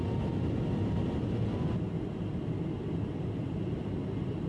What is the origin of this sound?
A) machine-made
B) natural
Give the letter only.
B